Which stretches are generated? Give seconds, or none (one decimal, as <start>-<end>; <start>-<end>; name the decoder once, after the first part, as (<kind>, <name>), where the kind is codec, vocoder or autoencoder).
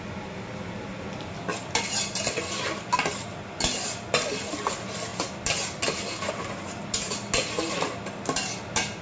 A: none